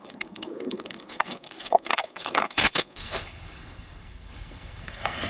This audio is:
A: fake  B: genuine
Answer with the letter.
A